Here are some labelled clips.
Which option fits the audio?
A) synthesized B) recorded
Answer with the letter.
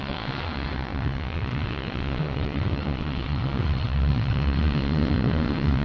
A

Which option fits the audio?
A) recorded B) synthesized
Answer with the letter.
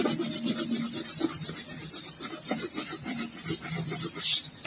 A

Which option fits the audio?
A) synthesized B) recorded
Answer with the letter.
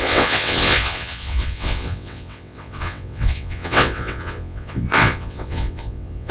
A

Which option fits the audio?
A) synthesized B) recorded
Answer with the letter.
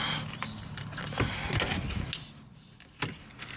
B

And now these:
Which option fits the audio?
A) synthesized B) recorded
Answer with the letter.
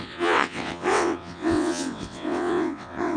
A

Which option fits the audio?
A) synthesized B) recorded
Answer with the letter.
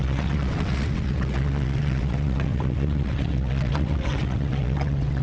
A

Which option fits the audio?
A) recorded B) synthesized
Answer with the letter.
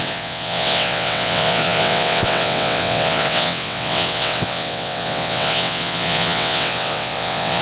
B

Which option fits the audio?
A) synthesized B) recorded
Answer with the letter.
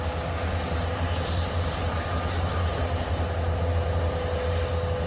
B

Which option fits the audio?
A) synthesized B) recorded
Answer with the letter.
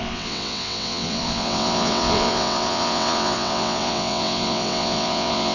A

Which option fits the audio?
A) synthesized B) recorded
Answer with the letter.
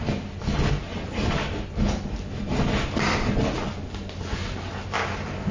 B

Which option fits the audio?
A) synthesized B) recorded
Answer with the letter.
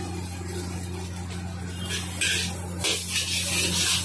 B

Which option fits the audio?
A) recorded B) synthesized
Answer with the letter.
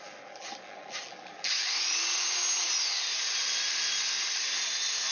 A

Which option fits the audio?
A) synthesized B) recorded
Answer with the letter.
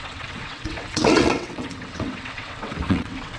A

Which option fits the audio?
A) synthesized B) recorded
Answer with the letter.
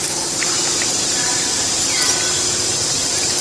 B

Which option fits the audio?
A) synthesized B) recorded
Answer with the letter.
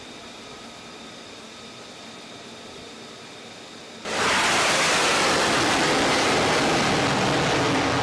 B